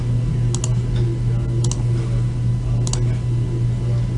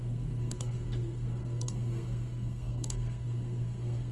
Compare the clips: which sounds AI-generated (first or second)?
second